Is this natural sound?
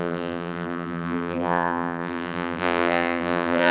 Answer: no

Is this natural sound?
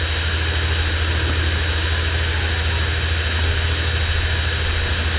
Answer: yes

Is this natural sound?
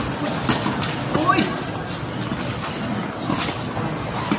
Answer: yes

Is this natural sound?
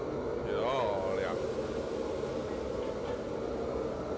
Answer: yes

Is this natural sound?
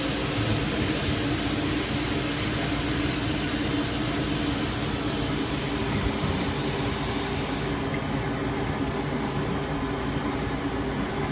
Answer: yes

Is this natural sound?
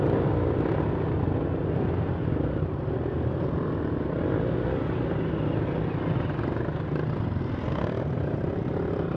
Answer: yes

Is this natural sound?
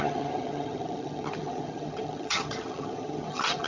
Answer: no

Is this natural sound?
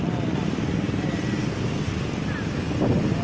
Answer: yes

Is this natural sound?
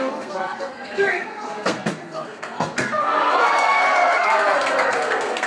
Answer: no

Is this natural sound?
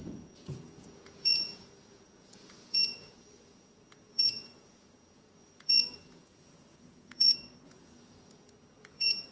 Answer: no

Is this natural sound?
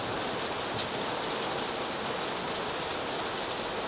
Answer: yes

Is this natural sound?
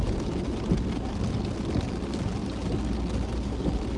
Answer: yes